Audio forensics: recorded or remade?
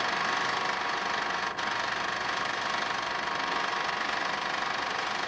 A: recorded